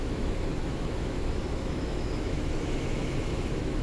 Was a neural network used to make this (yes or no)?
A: yes